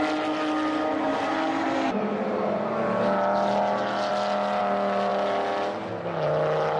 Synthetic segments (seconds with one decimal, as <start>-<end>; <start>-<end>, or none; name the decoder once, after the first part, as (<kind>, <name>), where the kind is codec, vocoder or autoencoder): 1.1-2.6 (vocoder, BigVGAN v2)